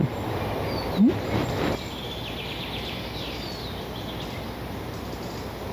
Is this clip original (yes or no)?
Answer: yes